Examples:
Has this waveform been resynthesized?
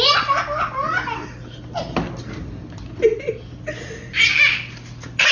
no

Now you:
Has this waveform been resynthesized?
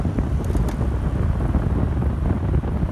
no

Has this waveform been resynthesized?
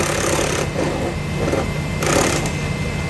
no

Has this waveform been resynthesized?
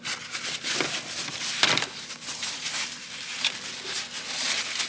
no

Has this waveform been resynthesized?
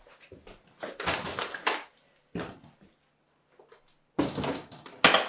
no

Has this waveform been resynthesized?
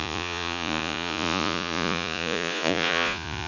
yes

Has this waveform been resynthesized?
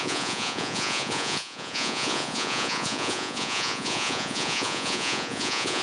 yes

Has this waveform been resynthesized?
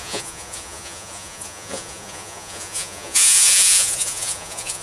yes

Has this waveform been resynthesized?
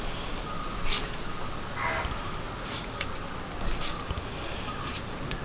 no